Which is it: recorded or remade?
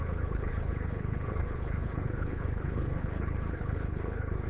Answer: remade